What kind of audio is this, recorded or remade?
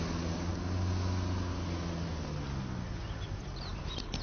recorded